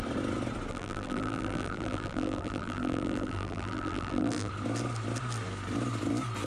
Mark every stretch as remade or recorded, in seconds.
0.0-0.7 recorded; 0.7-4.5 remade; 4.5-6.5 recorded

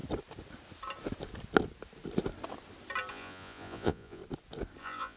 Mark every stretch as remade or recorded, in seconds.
0.0-3.1 recorded; 3.1-4.2 remade; 4.2-4.8 recorded; 4.8-5.2 remade